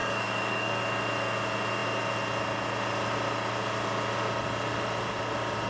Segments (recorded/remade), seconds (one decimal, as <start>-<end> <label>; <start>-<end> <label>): 0.0-0.8 remade; 0.8-5.7 recorded